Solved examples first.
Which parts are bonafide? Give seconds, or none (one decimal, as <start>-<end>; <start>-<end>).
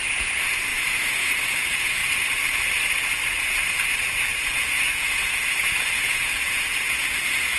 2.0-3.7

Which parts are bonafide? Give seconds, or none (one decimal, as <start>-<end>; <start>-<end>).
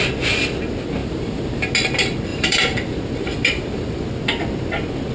0.0-1.0; 1.7-2.3; 4.1-5.1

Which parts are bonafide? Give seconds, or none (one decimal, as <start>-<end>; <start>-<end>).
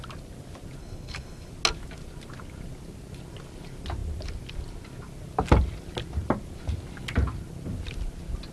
0.0-0.8; 1.5-8.5